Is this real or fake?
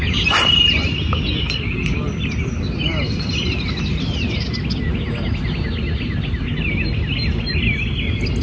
real